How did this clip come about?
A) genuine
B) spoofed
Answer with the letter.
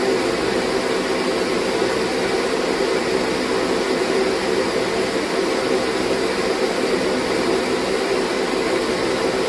A